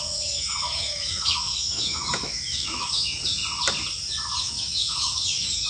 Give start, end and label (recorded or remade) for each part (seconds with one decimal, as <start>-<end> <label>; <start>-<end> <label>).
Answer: 0.0-3.4 remade; 3.4-4.4 recorded; 4.4-5.7 remade